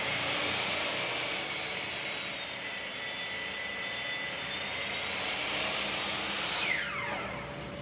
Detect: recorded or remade recorded